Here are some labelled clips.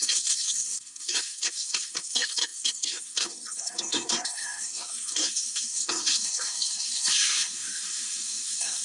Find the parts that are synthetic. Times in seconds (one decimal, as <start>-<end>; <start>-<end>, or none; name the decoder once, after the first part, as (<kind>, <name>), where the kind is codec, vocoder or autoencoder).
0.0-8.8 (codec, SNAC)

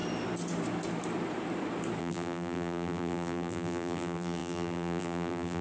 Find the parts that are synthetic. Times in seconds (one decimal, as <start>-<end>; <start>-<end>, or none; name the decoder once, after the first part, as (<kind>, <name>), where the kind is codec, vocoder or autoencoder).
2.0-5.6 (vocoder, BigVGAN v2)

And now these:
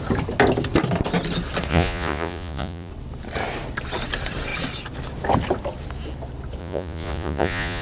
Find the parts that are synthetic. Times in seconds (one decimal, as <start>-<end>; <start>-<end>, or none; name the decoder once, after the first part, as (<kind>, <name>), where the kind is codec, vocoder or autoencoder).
1.7-2.9 (vocoder, Vocos); 6.6-7.8

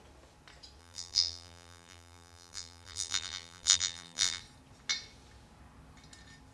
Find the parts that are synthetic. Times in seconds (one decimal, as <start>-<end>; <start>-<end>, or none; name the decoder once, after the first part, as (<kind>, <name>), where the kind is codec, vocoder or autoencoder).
0.8-4.4 (vocoder, BigVGAN v2)

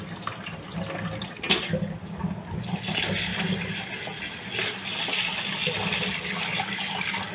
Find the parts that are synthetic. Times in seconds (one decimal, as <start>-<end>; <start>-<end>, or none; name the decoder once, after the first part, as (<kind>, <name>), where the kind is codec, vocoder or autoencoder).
none

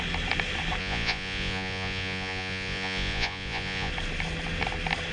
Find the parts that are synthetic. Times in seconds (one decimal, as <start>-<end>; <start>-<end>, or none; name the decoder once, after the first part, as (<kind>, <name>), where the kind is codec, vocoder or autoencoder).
0.8-3.9 (vocoder, Vocos)

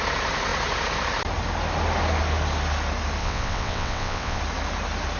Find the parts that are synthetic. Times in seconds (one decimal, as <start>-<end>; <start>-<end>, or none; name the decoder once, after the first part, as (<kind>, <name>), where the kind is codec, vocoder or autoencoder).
3.2-4.4 (vocoder, WaveNeXt)